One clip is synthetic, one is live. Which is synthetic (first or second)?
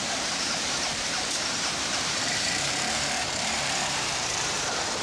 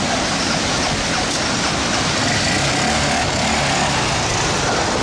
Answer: first